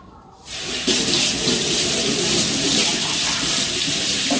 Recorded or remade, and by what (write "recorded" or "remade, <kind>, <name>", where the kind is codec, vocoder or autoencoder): remade, vocoder, BigVGAN v2